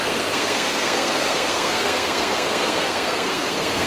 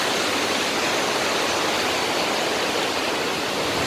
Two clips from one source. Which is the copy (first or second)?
first